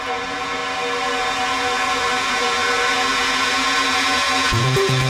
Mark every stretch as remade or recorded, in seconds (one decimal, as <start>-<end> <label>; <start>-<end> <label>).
0.0-0.6 remade; 0.6-1.2 recorded; 1.2-5.1 remade